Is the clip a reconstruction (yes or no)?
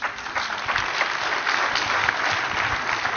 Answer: no